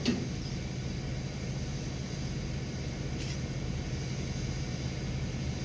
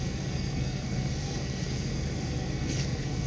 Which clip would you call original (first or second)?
first